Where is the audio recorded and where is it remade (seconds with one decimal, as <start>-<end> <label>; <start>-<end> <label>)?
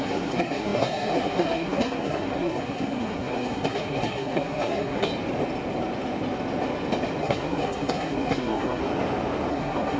0.0-5.1 remade; 5.1-7.2 recorded; 7.2-8.8 remade; 8.8-9.5 recorded; 9.5-10.0 remade